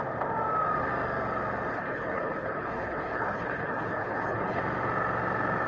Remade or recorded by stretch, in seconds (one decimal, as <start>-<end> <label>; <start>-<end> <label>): 0.0-1.7 recorded; 1.7-4.6 remade; 4.6-5.7 recorded